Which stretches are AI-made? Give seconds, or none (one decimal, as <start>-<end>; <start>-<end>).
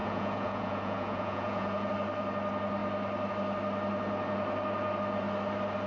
0.0-1.9